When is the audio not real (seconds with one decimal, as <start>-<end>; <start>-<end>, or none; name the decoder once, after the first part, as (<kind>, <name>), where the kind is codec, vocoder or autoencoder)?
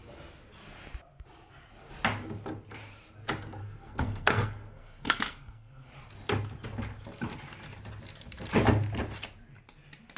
3.6-5.9 (codec, SNAC)